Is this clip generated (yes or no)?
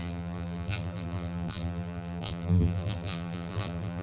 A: yes